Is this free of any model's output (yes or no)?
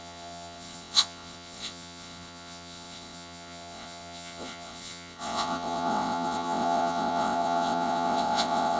no